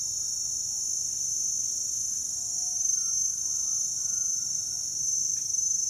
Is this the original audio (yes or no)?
yes